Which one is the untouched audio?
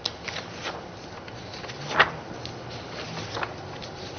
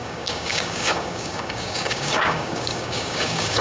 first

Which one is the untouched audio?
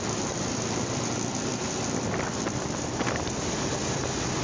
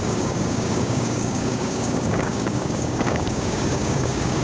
first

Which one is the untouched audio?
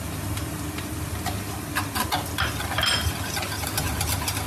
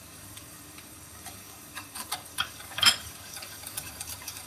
first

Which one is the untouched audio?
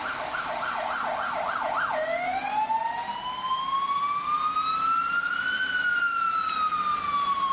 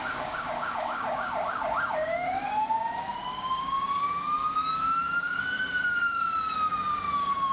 first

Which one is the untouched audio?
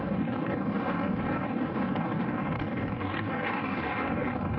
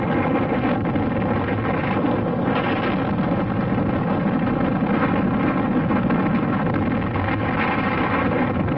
second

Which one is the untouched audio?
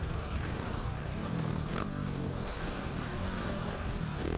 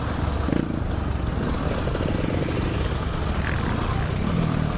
second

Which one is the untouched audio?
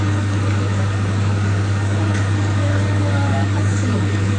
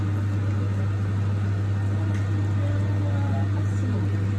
second